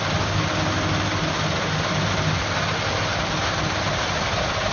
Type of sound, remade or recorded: recorded